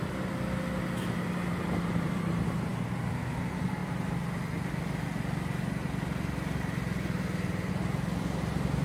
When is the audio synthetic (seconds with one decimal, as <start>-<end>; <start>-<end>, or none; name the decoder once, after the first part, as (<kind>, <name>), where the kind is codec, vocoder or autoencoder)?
none